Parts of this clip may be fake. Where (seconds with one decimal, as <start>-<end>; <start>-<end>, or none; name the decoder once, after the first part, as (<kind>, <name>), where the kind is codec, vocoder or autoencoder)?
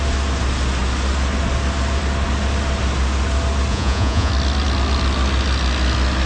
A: 3.7-4.3 (vocoder, Vocos)